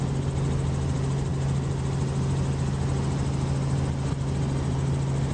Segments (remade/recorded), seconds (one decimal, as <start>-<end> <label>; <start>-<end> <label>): 0.0-5.3 recorded